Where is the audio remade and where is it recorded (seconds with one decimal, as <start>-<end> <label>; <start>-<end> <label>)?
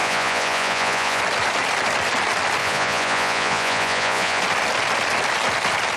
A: 0.0-1.2 remade; 1.2-2.6 recorded; 2.6-4.4 remade; 4.4-6.0 recorded